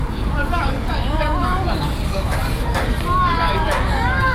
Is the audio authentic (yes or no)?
no